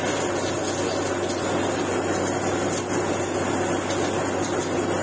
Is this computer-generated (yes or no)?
no